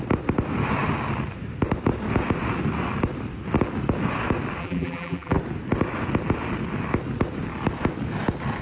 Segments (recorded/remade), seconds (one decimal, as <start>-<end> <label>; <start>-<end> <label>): 0.0-4.6 recorded; 4.6-5.4 remade; 5.4-8.6 recorded